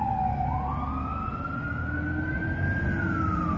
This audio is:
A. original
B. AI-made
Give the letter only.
A